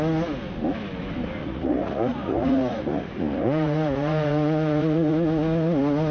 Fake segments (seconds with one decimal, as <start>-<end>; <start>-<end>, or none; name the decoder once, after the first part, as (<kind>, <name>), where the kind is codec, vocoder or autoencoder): 1.4-5.1 (vocoder, Vocos)